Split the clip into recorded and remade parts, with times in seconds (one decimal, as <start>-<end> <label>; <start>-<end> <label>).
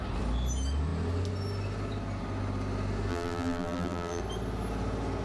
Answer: 0.0-3.1 recorded; 3.1-4.2 remade; 4.2-5.2 recorded